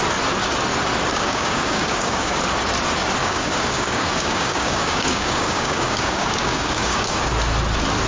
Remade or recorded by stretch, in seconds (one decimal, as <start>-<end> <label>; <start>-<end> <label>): 0.0-1.1 recorded; 1.1-2.4 remade; 2.4-3.2 recorded; 3.2-7.3 remade; 7.3-8.1 recorded

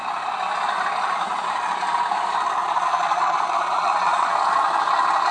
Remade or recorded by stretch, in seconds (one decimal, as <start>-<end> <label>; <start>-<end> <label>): 0.0-2.6 recorded; 2.6-4.3 remade; 4.3-5.3 recorded